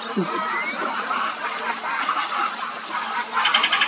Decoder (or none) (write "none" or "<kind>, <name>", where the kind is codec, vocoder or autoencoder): none